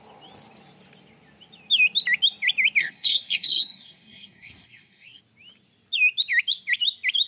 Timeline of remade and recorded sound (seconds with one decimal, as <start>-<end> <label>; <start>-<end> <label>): 0.0-2.8 recorded; 2.8-5.2 remade; 5.2-7.3 recorded